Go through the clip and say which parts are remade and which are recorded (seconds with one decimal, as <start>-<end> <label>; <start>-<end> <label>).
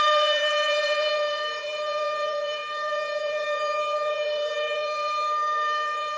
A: 0.0-6.2 remade